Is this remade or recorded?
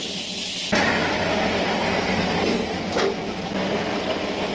recorded